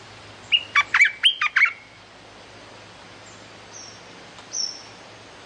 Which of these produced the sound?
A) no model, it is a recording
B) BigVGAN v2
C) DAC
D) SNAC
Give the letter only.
A